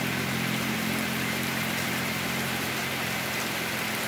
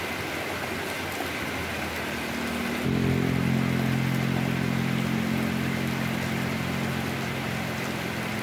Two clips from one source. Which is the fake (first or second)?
first